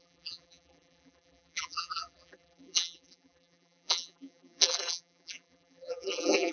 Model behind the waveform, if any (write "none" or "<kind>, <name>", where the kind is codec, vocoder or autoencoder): vocoder, BigVGAN v2